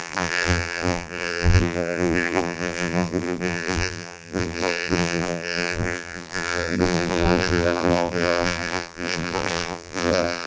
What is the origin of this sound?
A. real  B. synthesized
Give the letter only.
B